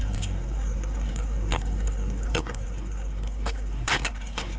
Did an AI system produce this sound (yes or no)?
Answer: yes